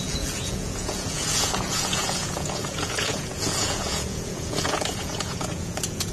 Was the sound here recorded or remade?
remade